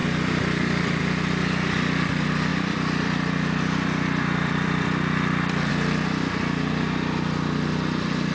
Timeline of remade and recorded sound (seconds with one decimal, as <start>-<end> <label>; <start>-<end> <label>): 0.0-1.0 remade; 1.0-2.5 recorded; 2.5-5.7 remade; 5.7-8.3 recorded